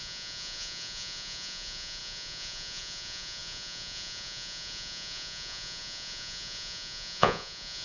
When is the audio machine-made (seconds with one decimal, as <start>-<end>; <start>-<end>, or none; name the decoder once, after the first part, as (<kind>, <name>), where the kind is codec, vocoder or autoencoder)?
0.0-7.8 (vocoder, Vocos)